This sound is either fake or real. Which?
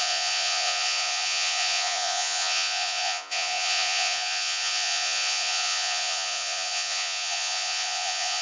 fake